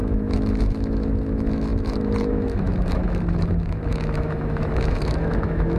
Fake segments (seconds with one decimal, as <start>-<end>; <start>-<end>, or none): 0.0-5.8